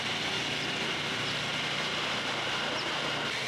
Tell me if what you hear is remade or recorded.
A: recorded